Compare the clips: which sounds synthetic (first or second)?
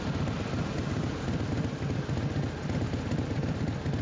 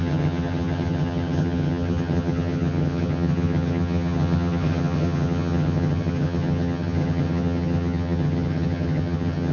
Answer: second